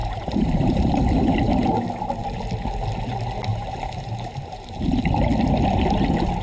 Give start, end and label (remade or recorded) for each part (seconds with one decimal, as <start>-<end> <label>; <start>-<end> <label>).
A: 0.0-0.9 remade; 0.9-3.5 recorded; 3.5-4.8 remade; 4.8-6.4 recorded